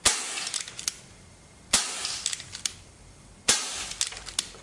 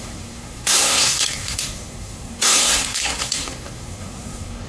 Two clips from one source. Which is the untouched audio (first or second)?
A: first